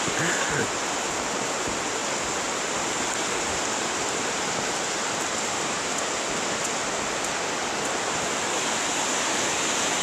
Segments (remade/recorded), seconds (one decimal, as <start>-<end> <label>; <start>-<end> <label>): 0.0-10.0 recorded